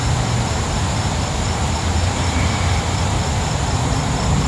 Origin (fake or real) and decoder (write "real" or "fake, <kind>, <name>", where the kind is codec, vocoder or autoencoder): fake, vocoder, BigVGAN v2